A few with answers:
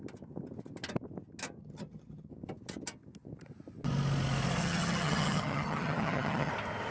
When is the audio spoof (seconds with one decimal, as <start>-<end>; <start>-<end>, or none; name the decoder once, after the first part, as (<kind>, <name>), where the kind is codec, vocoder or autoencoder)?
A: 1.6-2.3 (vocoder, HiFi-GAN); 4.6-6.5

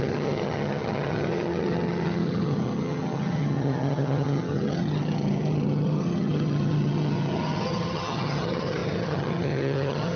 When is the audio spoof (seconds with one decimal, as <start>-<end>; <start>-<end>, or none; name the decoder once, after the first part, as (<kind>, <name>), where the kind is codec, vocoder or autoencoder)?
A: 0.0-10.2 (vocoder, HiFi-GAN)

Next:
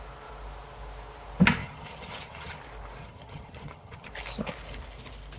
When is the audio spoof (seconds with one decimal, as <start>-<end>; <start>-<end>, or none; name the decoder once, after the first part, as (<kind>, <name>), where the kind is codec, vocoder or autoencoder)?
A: 1.6-2.6 (vocoder, HiFi-GAN); 3.0-4.1